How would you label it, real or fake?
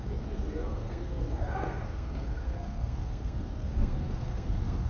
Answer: fake